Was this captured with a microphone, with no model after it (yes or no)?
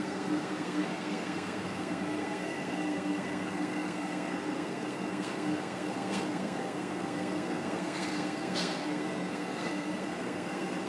no